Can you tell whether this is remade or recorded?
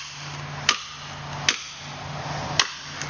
recorded